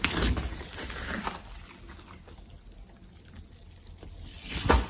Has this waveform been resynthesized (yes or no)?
no